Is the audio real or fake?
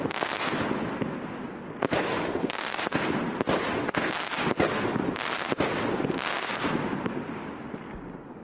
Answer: real